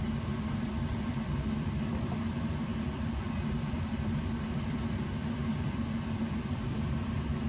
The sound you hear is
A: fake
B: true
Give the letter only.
A